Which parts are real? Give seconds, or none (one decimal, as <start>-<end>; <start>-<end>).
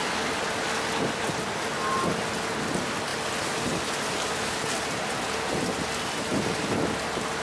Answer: 0.0-7.4